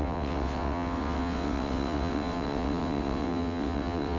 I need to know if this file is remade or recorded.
remade